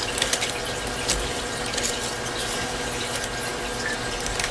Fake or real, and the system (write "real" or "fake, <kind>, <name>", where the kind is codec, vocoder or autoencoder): real